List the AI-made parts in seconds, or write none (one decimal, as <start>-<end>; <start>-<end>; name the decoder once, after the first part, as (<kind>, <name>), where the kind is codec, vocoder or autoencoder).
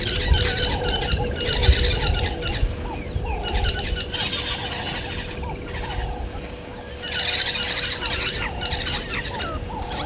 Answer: none